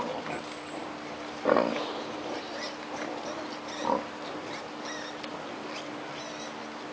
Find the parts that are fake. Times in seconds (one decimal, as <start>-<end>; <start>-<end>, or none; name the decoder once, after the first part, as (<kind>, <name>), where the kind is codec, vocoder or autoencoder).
none

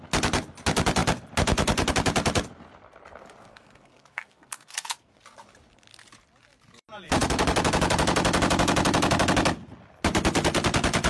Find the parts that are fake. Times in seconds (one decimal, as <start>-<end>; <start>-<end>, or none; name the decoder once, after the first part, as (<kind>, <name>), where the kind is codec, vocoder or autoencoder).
3.5-5.1 (codec, SNAC)

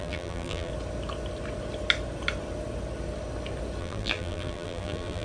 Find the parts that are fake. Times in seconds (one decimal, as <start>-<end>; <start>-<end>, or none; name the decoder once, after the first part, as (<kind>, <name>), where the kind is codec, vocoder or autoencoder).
0.0-0.7 (vocoder, BigVGAN v2); 3.8-5.2

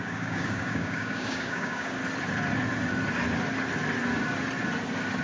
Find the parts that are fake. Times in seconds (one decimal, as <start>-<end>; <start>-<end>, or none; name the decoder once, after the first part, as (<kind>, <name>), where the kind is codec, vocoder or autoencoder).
0.0-2.0 (codec, DAC)

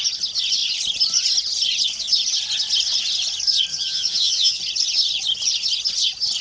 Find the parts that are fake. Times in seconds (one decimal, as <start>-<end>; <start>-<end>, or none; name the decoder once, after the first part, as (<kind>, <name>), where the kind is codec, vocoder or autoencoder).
3.7-4.6 (vocoder, HiFi-GAN)

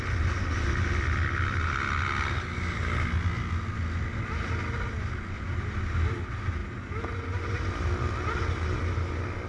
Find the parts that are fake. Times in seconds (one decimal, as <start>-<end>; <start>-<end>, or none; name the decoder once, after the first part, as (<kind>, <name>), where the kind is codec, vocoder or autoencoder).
none

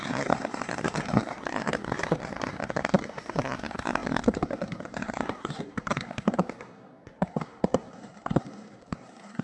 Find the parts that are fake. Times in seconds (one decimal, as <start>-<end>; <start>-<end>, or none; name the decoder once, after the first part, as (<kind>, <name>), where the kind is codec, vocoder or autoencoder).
0.0-9.4 (codec, SNAC)